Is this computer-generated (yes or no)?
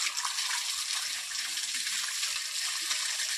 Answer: no